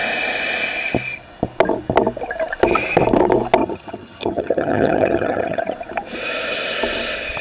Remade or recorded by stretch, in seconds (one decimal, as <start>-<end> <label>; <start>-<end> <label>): 0.0-3.6 recorded; 3.6-5.7 remade; 5.7-7.4 recorded